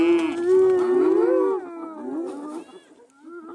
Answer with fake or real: real